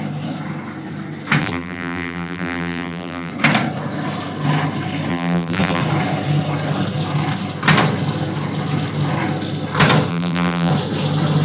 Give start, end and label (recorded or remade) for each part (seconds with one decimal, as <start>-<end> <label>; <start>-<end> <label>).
0.0-1.4 recorded; 1.4-3.3 remade; 3.3-5.1 recorded; 5.1-5.8 remade; 5.8-10.1 recorded; 10.1-10.7 remade; 10.7-11.4 recorded